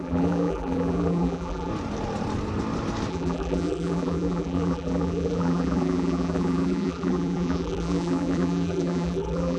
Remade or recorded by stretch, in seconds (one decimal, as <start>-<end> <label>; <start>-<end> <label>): 0.0-1.7 remade; 1.7-3.1 recorded; 3.1-9.6 remade